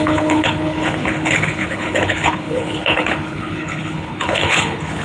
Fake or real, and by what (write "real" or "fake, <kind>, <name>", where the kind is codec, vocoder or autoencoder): fake, codec, HILCodec